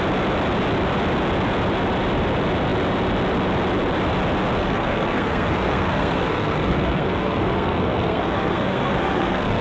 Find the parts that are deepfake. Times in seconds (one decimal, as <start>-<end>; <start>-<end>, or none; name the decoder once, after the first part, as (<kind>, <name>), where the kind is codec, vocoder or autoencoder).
4.6-9.6 (codec, SNAC)